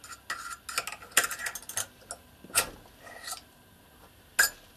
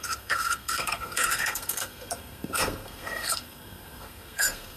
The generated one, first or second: second